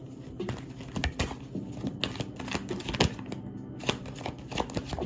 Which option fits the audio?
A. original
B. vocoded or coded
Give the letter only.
A